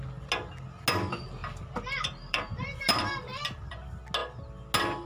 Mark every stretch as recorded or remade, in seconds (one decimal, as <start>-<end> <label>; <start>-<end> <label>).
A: 0.0-1.4 recorded; 1.4-3.7 remade; 3.7-5.1 recorded